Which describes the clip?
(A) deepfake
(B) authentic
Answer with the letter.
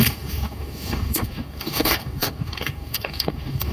A